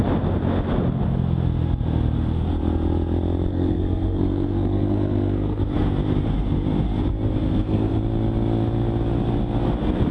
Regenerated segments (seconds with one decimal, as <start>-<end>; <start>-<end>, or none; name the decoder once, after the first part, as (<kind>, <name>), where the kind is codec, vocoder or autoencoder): 3.5-5.6 (codec, SNAC); 7.4-8.0